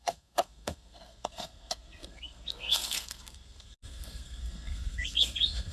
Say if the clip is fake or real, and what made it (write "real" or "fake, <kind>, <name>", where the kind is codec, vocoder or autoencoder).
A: fake, codec, SNAC